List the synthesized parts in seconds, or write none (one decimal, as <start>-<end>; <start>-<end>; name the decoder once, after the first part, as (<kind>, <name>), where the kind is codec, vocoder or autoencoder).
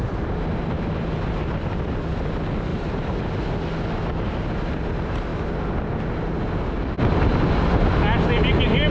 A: 2.7-3.2 (vocoder, BigVGAN v2); 7.3-7.9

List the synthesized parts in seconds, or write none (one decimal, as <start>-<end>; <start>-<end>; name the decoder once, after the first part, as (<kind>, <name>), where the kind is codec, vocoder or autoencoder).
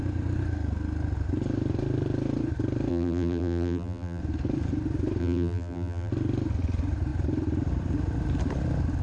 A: 2.9-4.2 (vocoder, BigVGAN v2); 5.2-6.1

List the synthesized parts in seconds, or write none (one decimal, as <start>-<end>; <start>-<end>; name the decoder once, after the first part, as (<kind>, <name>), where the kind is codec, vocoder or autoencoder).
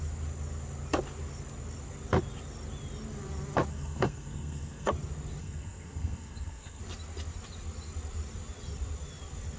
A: 3.7-4.9 (codec, SNAC); 5.4-6.8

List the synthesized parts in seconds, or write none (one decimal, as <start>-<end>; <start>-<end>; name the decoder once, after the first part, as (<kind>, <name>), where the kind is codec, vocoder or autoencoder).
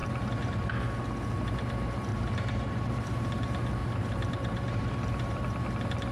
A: 2.1-3.3 (vocoder, BigVGAN v2); 3.8-5.4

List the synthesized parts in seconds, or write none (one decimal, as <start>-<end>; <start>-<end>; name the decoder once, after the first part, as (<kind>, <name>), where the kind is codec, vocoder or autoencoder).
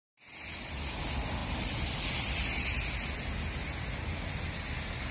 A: none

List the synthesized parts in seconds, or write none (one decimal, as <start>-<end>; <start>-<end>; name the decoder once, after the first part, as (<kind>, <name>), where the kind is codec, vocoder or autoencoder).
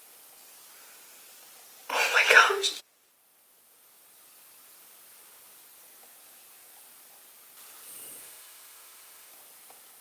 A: 8.2-9.3 (autoencoder, DAC-VAE)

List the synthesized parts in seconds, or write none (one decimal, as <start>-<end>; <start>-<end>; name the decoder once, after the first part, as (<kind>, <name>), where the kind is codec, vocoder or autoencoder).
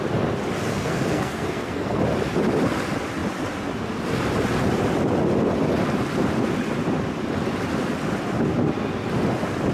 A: 0.7-2.0 (codec, SNAC)